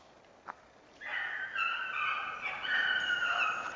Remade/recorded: recorded